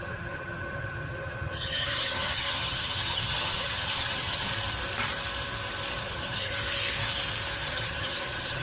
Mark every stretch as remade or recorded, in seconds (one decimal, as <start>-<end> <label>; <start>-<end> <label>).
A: 0.0-4.5 remade; 4.5-6.0 recorded; 6.0-6.5 remade; 6.5-7.7 recorded; 7.7-8.6 remade